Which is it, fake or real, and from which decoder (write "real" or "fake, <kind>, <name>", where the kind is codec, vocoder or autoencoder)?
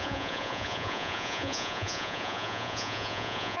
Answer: fake, vocoder, Vocos